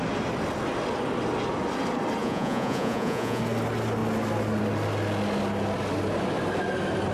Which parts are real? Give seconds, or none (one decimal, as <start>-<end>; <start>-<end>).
0.0-2.2; 3.4-7.1

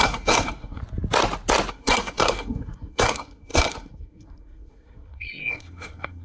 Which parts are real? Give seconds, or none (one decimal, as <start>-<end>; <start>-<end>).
0.8-1.7

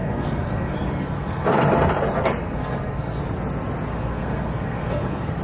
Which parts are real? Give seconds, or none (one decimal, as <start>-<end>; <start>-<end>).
1.6-2.4; 3.2-3.9

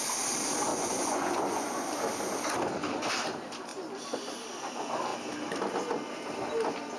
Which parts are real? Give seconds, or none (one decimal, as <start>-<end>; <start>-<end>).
0.0-0.7; 1.9-7.0